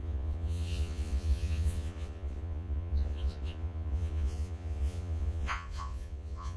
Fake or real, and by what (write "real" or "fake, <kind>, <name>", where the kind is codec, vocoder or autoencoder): fake, vocoder, Vocos